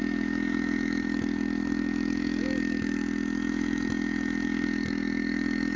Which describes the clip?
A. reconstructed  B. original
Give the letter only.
A